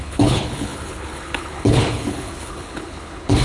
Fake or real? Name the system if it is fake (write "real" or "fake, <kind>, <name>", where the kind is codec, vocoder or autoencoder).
fake, codec, HILCodec